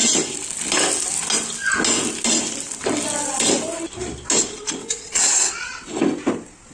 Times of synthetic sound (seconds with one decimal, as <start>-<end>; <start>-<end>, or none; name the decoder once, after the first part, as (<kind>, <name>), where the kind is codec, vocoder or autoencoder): 4.8-6.0 (vocoder, WaveNeXt)